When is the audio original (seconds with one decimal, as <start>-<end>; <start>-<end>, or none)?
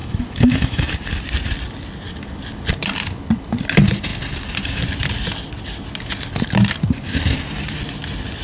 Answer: 0.9-8.4